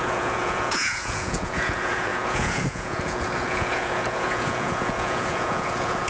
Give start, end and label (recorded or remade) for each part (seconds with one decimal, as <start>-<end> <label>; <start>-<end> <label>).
0.0-6.1 remade